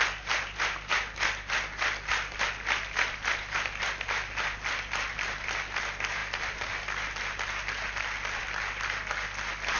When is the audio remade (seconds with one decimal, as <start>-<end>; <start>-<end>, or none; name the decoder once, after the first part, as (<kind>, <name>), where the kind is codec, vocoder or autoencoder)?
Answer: none